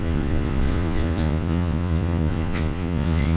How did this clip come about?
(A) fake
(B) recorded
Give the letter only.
A